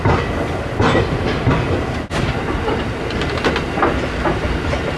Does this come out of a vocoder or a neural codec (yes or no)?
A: no